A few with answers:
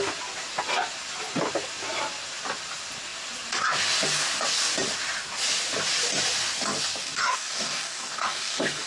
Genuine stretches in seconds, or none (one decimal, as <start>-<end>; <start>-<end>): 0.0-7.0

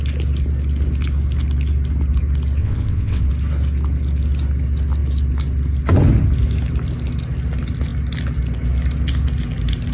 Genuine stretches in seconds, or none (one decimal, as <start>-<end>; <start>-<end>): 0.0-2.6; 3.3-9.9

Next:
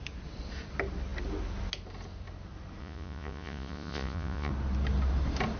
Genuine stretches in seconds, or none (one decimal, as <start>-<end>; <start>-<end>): 0.0-2.8; 4.5-5.6